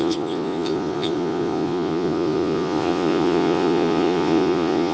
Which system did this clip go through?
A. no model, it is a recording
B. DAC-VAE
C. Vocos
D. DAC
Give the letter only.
C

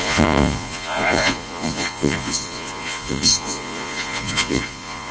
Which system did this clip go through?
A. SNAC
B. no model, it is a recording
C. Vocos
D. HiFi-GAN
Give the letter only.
C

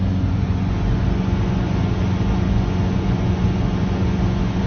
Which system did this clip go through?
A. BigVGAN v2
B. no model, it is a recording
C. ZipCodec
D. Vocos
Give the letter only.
D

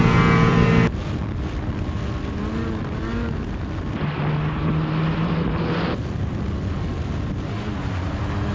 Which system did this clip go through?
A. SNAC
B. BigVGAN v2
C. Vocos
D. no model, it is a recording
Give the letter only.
D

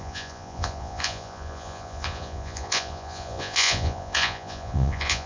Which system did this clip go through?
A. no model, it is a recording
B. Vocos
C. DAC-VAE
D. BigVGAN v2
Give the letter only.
B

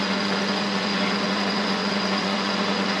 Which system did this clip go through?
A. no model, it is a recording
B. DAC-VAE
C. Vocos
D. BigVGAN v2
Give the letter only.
C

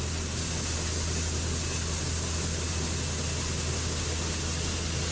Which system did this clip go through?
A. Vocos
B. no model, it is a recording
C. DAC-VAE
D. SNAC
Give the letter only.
B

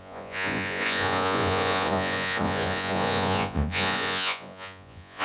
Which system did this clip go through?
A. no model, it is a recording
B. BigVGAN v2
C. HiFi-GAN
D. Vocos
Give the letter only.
D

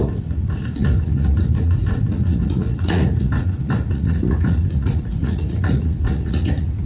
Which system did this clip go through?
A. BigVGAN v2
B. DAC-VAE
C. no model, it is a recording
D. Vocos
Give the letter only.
D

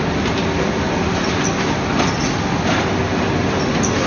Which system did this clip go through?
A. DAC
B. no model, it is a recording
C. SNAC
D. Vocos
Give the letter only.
B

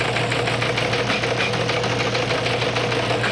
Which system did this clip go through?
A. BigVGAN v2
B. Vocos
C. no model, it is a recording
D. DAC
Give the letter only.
C